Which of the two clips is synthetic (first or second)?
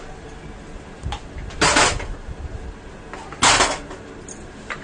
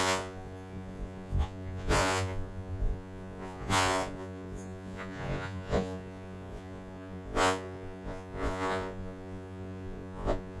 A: second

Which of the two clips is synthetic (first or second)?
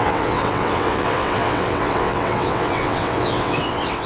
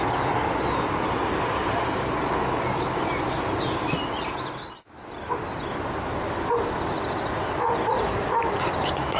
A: first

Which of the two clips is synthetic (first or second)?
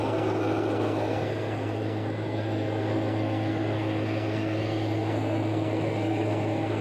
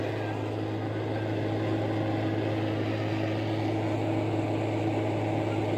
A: first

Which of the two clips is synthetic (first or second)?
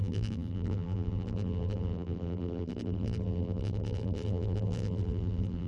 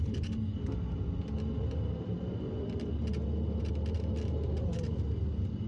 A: first